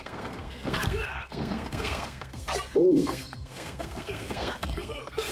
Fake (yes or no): yes